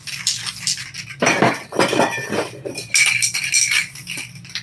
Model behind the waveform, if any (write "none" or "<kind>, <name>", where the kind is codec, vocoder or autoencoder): none